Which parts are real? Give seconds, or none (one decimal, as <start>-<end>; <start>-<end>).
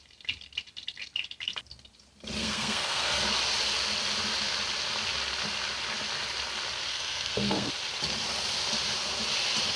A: 0.0-2.4; 3.2-6.9; 7.7-9.8